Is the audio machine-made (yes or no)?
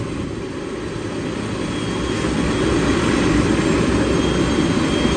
no